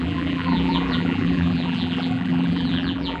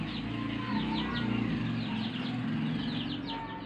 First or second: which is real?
second